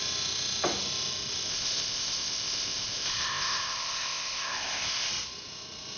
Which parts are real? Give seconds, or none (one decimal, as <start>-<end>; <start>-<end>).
0.0-1.5; 5.1-6.0